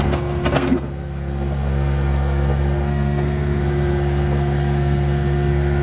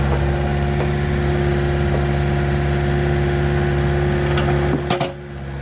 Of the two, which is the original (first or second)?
second